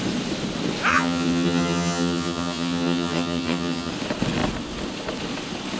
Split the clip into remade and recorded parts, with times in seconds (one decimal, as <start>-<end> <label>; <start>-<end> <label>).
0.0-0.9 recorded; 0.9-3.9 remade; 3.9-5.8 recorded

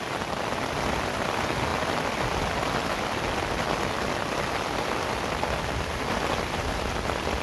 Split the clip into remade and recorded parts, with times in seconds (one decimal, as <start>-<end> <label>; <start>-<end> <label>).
0.0-7.4 recorded

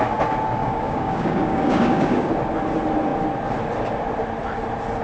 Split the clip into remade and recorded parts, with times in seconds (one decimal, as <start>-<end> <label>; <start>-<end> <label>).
0.0-0.6 recorded; 0.6-2.3 remade; 2.3-5.0 recorded

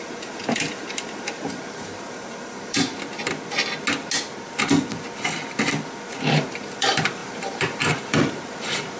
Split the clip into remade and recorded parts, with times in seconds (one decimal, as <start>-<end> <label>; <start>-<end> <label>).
0.0-2.9 remade; 2.9-6.3 recorded; 6.3-9.0 remade